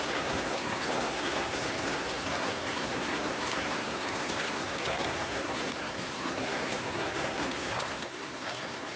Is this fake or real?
fake